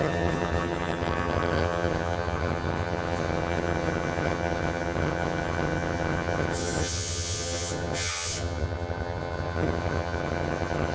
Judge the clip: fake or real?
fake